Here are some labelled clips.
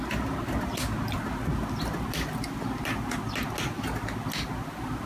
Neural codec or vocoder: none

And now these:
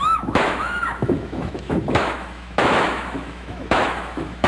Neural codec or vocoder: autoencoder, DAC-VAE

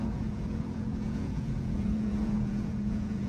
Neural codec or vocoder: vocoder, Vocos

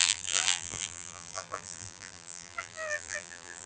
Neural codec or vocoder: vocoder, BigVGAN v2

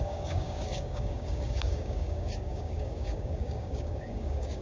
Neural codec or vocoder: codec, DAC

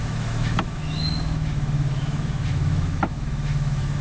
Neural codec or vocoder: autoencoder, DAC-VAE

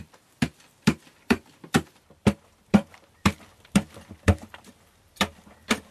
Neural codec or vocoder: vocoder, BigVGAN v2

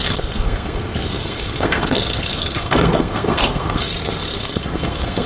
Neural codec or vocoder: codec, SNAC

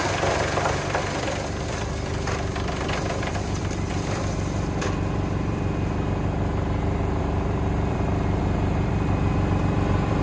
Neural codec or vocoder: vocoder, BigVGAN v2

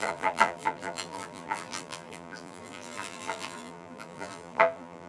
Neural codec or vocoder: vocoder, BigVGAN v2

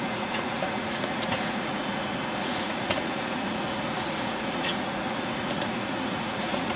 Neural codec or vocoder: vocoder, Vocos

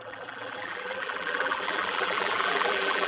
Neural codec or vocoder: vocoder, BigVGAN v2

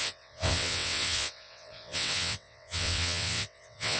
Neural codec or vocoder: vocoder, WaveNeXt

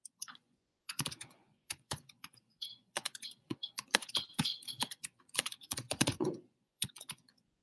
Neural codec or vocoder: vocoder, Vocos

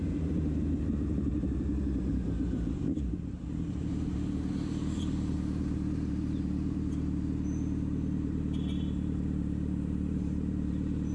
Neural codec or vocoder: vocoder, BigVGAN v2